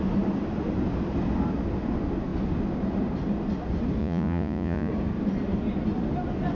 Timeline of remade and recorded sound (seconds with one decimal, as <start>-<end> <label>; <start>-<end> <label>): 0.0-4.0 recorded; 4.0-4.9 remade; 4.9-6.5 recorded